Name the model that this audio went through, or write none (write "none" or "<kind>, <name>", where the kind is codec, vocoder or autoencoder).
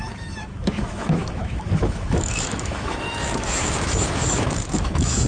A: autoencoder, DAC-VAE